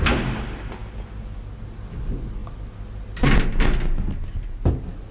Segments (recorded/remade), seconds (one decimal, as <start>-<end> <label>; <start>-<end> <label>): 0.0-0.8 recorded; 0.8-1.4 remade; 1.4-5.1 recorded